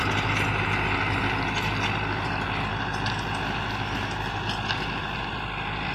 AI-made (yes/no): no